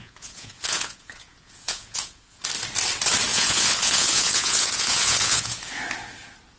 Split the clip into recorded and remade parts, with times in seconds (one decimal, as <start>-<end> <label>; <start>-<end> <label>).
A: 0.0-2.4 remade; 2.4-3.3 recorded; 3.3-5.8 remade; 5.8-6.6 recorded